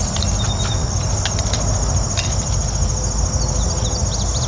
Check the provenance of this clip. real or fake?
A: real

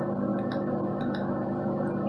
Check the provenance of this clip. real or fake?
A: real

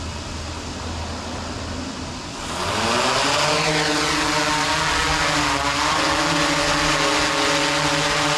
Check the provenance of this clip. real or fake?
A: real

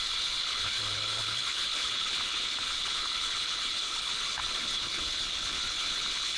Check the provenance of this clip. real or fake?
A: fake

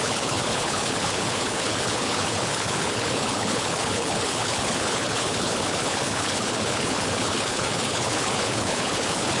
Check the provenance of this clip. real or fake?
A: fake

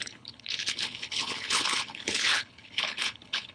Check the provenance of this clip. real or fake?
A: fake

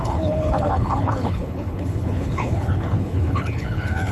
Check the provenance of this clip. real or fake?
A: fake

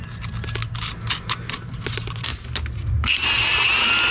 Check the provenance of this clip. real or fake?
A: real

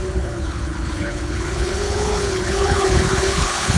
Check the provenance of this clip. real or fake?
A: fake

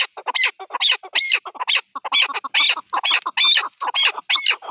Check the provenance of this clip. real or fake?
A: real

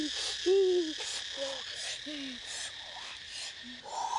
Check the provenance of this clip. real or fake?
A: real